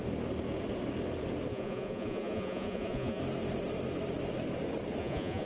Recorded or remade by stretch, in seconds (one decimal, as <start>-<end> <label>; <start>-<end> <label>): 0.0-1.5 recorded; 1.5-3.2 remade; 3.2-5.0 recorded; 5.0-5.5 remade